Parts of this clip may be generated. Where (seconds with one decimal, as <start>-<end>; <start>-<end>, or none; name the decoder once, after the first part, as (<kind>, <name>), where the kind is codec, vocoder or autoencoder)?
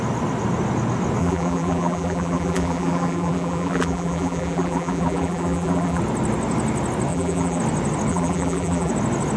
1.2-6.0 (vocoder, BigVGAN v2); 7.1-7.6; 8.1-8.9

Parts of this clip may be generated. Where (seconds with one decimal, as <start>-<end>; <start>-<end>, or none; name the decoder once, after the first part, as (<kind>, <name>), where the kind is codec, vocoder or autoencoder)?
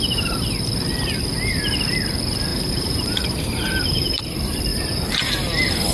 2.5-4.2 (vocoder, BigVGAN v2); 4.7-5.3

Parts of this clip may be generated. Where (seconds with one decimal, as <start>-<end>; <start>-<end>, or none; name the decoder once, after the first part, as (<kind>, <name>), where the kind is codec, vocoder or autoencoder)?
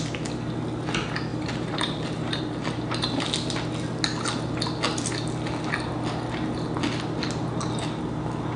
1.3-2.4 (vocoder, BigVGAN v2)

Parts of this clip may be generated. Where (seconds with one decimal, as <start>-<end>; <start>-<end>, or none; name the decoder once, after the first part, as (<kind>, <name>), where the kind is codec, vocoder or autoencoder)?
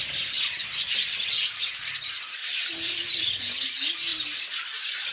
0.6-1.3 (vocoder, BigVGAN v2); 2.4-3.2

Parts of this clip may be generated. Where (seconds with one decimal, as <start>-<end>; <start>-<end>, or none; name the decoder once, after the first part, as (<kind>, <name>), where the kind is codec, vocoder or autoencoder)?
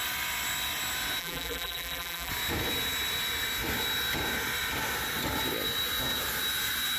1.2-2.3 (vocoder, BigVGAN v2)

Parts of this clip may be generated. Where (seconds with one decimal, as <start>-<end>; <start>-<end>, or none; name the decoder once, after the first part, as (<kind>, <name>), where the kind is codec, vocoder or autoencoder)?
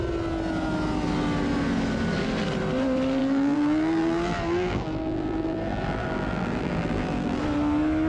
3.2-7.4 (vocoder, BigVGAN v2)